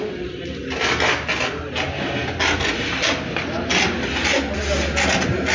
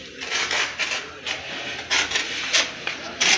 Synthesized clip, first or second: second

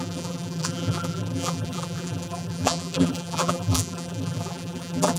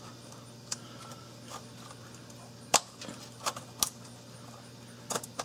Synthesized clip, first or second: first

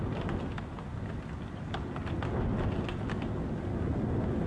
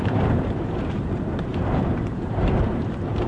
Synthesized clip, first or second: second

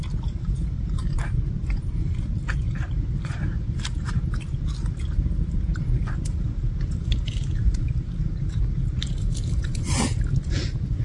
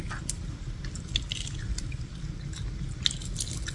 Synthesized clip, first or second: first